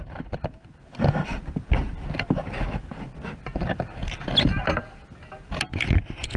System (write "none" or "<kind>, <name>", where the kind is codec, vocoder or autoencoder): none